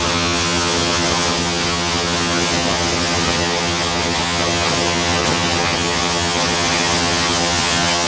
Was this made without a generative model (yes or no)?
no